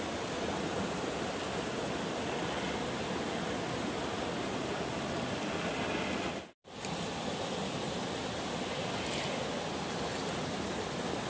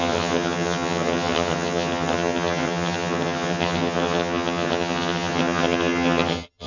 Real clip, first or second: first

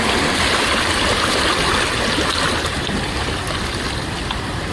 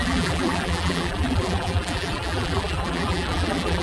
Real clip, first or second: first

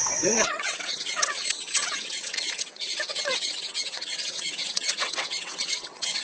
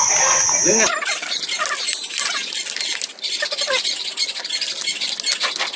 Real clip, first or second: second